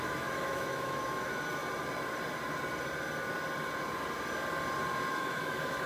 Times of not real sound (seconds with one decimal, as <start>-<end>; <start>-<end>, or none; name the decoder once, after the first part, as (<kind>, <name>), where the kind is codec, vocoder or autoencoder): 0.0-1.6 (autoencoder, DAC-VAE); 5.1-5.9